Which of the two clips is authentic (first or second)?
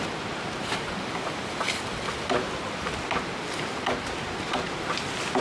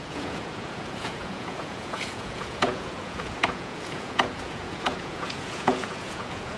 first